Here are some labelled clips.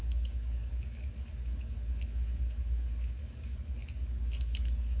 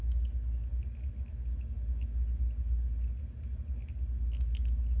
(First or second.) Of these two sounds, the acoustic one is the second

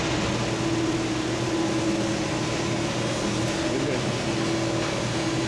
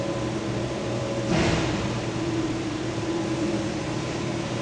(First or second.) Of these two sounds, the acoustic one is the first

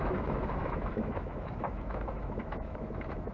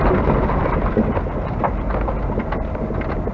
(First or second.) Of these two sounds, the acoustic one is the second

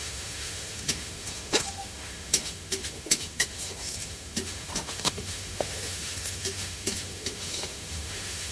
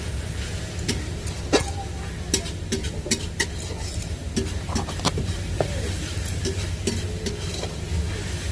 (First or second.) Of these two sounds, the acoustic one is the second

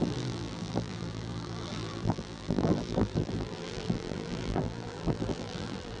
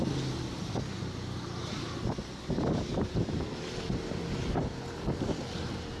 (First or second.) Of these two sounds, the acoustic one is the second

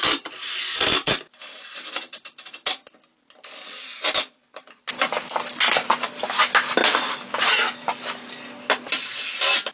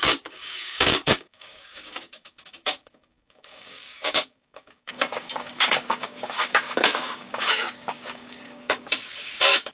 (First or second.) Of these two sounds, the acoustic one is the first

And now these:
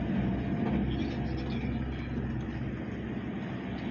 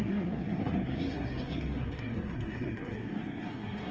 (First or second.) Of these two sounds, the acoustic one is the first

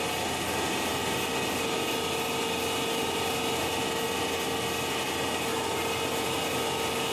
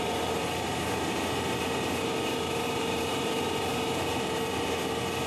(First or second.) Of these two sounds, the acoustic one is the first